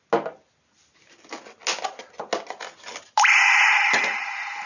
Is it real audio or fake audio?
real